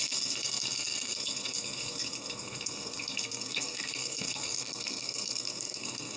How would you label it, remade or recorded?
remade